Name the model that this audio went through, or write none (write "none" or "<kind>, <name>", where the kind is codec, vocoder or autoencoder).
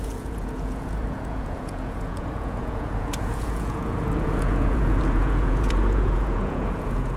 vocoder, Vocos